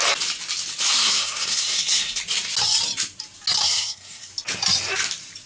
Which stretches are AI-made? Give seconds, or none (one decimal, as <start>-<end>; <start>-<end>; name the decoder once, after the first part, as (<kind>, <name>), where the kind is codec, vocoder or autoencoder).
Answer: 1.0-2.2 (codec, SNAC); 3.6-4.3